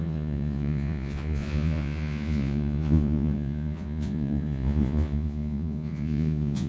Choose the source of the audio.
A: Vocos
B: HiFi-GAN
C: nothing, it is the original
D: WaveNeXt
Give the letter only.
A